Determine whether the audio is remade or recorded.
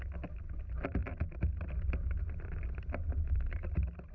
recorded